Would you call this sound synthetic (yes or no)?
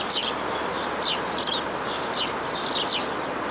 no